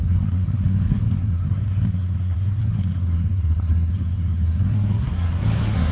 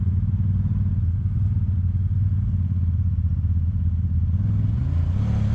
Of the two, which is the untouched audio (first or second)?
second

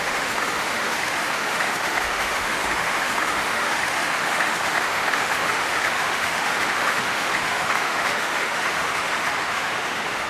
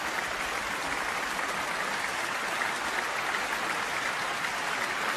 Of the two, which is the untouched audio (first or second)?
second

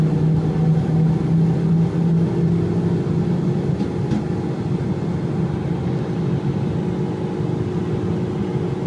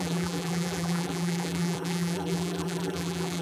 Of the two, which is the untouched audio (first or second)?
first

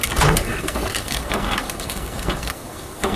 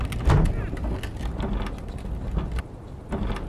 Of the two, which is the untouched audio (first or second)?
second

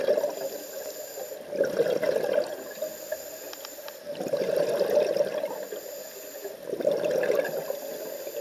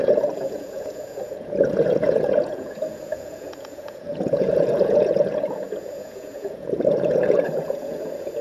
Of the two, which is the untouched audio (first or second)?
first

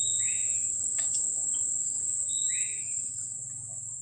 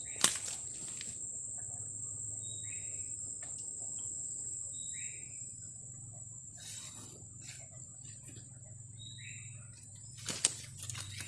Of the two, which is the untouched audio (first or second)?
second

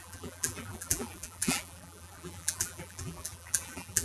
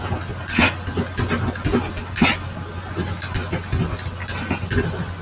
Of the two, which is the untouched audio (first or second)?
second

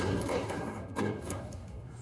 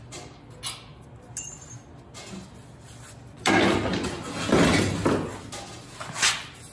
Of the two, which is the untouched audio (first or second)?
second